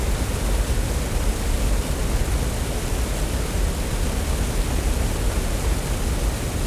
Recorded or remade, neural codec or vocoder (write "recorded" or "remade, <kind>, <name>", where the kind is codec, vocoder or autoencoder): recorded